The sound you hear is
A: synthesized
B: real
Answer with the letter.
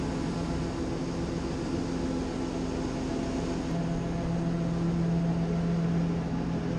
B